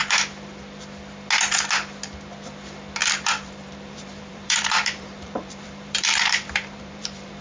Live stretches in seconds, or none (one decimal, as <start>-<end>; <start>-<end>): 0.0-3.0